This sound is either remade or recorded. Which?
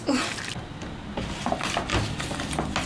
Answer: recorded